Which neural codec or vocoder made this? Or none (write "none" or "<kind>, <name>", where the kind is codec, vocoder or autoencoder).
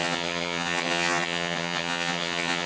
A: vocoder, HiFi-GAN